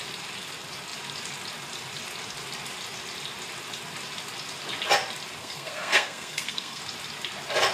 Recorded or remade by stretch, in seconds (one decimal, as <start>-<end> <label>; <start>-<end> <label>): 0.0-5.4 recorded; 5.4-6.8 remade; 6.8-7.7 recorded